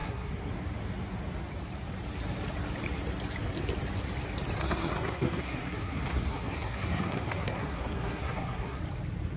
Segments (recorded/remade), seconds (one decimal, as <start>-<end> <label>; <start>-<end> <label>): 0.0-0.5 remade; 0.5-4.6 recorded; 4.6-8.8 remade; 8.8-9.4 recorded